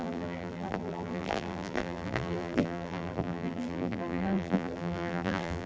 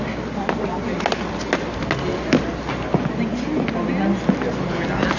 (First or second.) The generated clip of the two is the first